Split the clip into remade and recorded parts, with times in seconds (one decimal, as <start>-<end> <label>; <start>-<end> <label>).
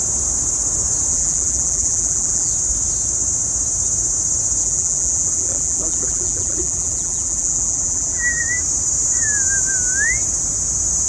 0.0-1.1 recorded; 1.1-2.5 remade; 2.5-4.6 recorded; 4.6-8.4 remade; 8.4-11.1 recorded